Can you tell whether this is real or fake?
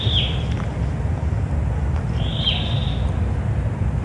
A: real